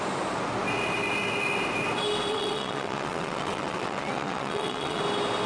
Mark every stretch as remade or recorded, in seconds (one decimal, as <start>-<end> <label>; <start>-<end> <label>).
0.0-2.3 recorded; 2.3-5.0 remade; 5.0-5.5 recorded